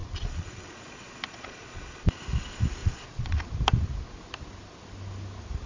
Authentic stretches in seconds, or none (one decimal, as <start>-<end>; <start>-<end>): 2.2-2.8; 3.5-5.7